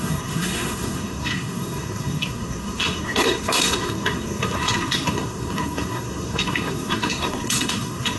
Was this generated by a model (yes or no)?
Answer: yes